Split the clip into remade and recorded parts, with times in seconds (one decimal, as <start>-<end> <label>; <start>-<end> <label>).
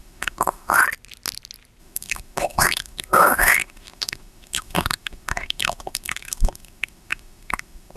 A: 0.0-0.8 remade; 0.8-1.8 recorded; 1.8-8.0 remade